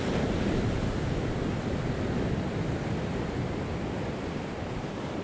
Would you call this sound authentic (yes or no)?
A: no